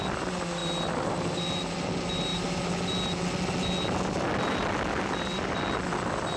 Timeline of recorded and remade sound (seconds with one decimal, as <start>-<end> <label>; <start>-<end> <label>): 0.0-6.4 recorded